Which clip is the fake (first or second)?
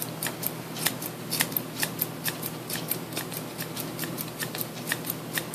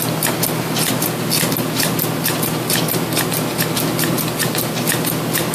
first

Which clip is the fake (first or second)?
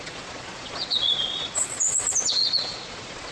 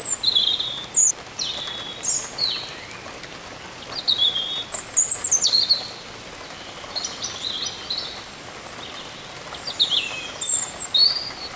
first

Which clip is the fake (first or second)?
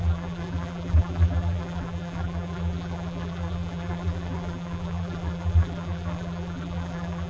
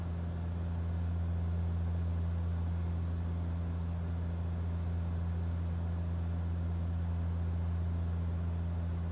first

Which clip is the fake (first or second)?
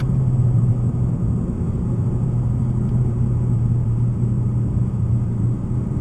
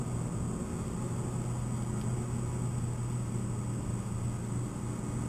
first